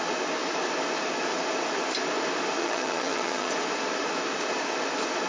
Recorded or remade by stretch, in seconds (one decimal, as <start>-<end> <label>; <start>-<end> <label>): 0.0-2.6 recorded; 2.6-3.5 remade; 3.5-5.3 recorded